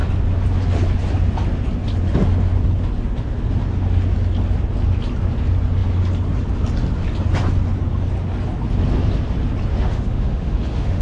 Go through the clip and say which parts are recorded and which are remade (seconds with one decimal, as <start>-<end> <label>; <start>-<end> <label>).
0.0-9.7 recorded; 9.7-11.0 remade